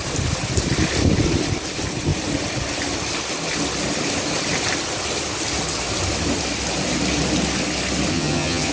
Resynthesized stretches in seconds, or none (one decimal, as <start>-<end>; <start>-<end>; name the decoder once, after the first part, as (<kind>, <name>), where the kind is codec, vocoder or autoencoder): 8.1-8.7 (vocoder, HiFi-GAN)